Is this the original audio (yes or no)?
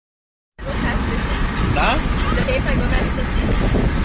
yes